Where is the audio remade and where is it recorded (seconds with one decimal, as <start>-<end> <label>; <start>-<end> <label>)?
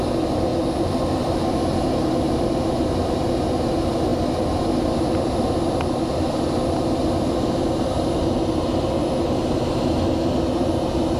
0.0-11.2 recorded